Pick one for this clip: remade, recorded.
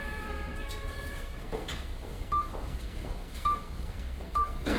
remade